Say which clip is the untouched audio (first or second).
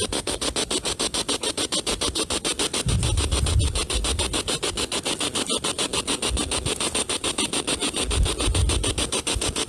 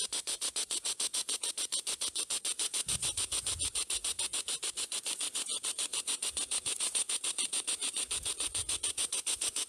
first